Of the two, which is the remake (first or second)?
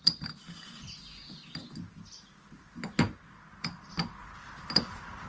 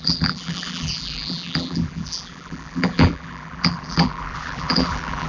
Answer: second